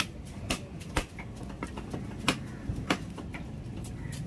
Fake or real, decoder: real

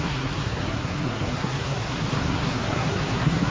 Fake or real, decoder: fake, codec, SNAC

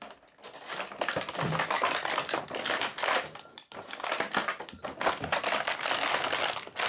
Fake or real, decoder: real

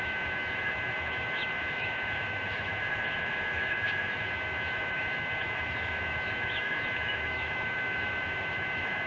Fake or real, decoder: fake, autoencoder, DAC-VAE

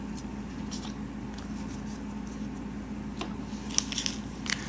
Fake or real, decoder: real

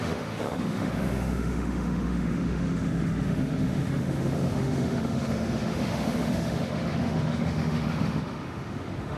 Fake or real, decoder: fake, autoencoder, DAC-VAE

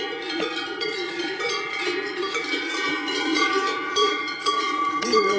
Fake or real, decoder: fake, vocoder, Vocos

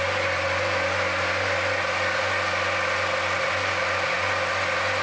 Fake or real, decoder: real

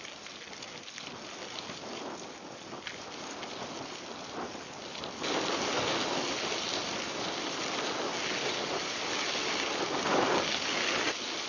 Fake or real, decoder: real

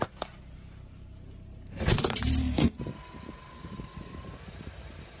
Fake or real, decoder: fake, vocoder, BigVGAN v2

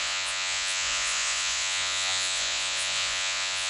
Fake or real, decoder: fake, vocoder, Vocos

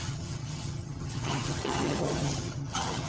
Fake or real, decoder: fake, vocoder, HiFi-GAN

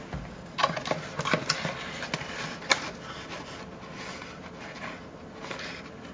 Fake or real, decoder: real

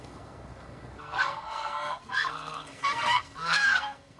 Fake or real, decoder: fake, codec, SNAC